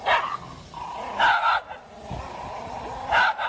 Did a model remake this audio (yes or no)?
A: no